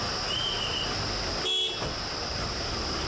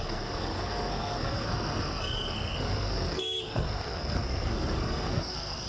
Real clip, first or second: first